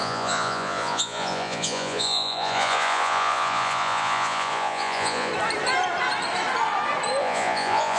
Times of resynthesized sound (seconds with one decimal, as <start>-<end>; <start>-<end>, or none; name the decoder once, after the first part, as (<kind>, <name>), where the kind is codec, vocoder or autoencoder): 0.0-5.3 (vocoder, Vocos); 7.2-8.0